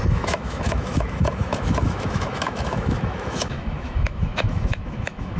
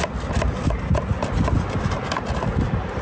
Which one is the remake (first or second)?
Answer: first